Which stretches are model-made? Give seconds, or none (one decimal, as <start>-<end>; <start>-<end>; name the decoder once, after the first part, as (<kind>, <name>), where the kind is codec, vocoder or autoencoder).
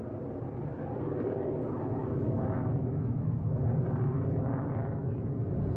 2.0-3.4 (autoencoder, DAC-VAE)